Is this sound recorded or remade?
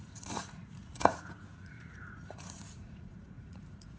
remade